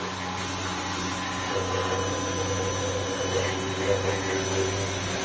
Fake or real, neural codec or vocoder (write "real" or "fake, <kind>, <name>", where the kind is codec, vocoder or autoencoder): real